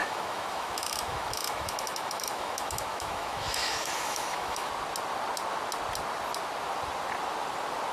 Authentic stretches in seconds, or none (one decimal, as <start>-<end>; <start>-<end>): 4.7-7.9